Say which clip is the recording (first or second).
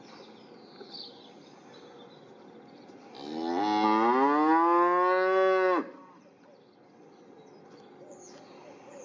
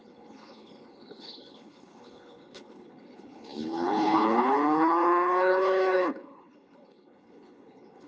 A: first